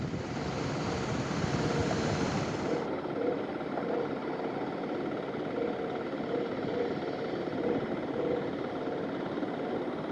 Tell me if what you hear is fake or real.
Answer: real